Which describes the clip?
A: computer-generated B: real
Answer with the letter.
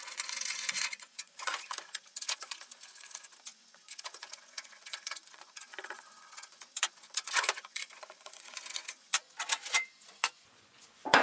A